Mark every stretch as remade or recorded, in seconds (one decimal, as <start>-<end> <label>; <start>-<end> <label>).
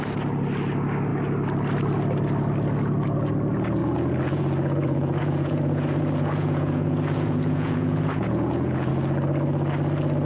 0.0-3.8 recorded; 3.8-8.9 remade; 8.9-10.2 recorded